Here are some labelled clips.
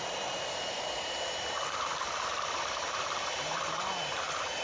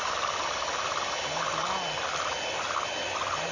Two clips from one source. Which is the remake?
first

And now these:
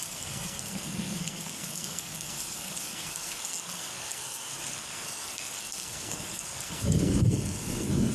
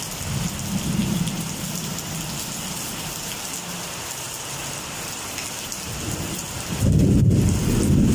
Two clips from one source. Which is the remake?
first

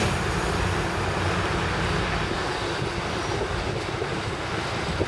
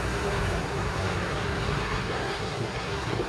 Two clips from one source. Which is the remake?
second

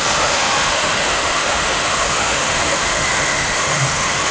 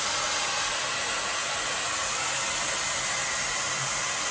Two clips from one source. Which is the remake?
first